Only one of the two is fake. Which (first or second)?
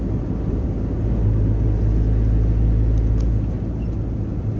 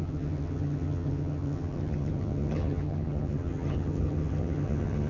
second